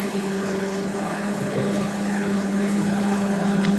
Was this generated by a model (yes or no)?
yes